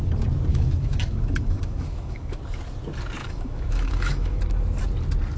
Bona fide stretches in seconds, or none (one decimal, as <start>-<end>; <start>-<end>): 0.0-0.5; 2.4-3.2; 4.4-5.4